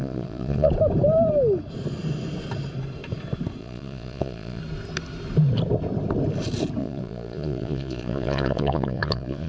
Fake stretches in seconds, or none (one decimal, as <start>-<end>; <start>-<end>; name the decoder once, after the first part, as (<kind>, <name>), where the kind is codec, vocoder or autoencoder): 0.0-0.7 (vocoder, Vocos); 3.6-4.6; 6.8-9.5